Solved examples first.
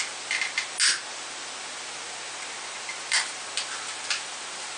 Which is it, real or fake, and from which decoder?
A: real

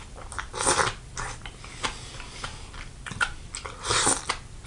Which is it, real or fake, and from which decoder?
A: real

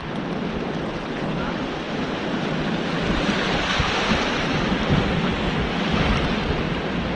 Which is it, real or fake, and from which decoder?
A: real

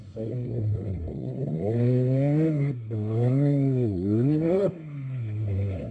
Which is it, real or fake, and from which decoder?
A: fake, codec, SNAC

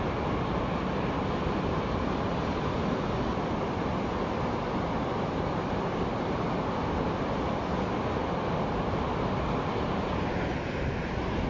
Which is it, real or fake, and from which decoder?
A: real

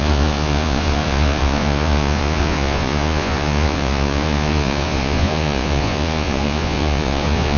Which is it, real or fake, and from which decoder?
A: fake, vocoder, Vocos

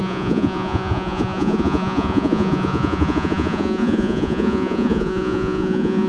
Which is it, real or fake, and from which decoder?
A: fake, vocoder, Vocos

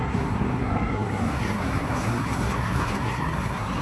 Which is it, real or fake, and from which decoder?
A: fake, codec, SNAC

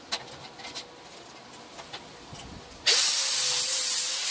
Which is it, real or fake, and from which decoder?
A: real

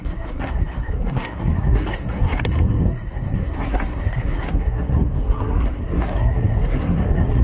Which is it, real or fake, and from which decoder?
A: fake, codec, SNAC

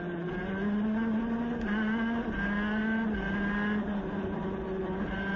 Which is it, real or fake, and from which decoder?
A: real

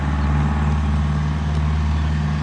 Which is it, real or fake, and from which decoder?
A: real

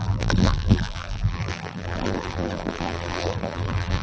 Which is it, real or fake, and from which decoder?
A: fake, vocoder, BigVGAN v2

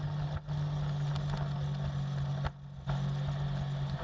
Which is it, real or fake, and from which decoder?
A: real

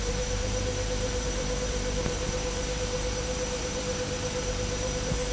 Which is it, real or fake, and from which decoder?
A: fake, vocoder, BigVGAN v2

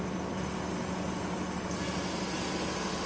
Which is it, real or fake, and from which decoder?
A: real